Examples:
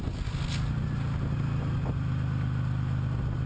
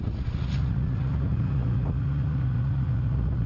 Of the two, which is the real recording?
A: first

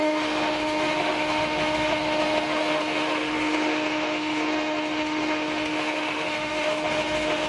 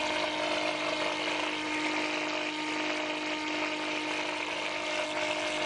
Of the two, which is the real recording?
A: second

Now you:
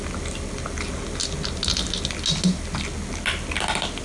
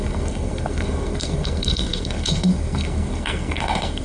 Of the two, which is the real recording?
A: first